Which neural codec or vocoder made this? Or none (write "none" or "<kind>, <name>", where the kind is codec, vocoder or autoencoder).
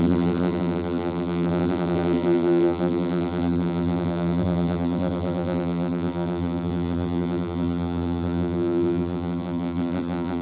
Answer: vocoder, BigVGAN v2